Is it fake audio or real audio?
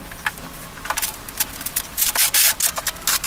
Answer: real